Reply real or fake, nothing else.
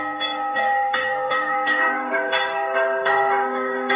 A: fake